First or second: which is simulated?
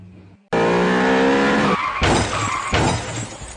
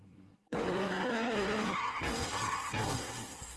second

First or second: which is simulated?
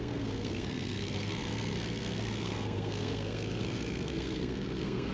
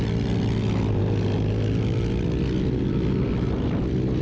first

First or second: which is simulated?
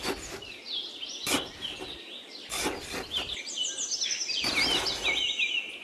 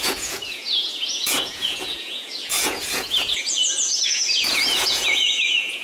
second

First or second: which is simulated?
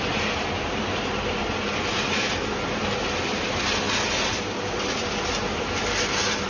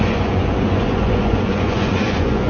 second